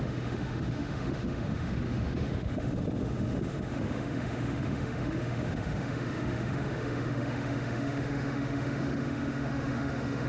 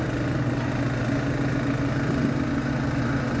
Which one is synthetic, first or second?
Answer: first